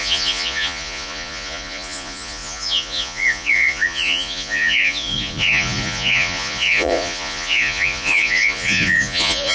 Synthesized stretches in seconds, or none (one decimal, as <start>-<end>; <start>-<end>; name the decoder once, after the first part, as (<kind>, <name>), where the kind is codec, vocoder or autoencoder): 0.0-9.5 (vocoder, Vocos)